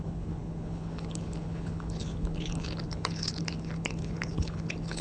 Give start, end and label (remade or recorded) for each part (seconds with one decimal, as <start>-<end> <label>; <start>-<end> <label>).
0.0-5.0 remade